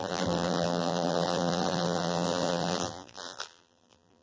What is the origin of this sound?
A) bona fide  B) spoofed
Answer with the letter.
B